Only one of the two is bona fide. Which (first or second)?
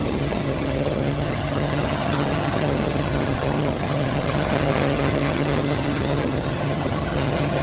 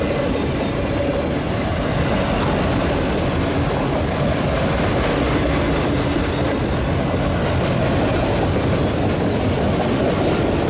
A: second